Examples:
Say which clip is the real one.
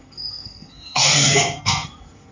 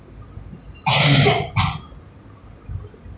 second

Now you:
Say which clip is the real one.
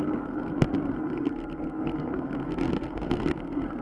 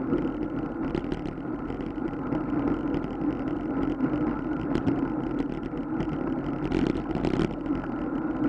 second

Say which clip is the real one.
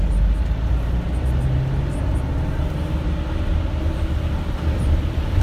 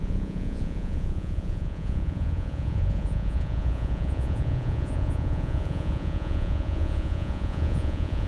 first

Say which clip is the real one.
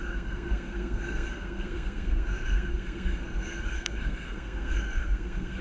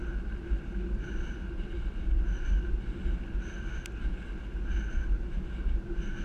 second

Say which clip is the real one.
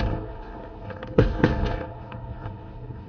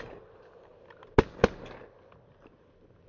second